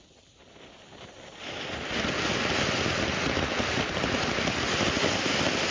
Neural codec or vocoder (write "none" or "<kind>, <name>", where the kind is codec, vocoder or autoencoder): none